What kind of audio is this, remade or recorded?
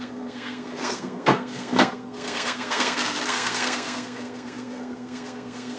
remade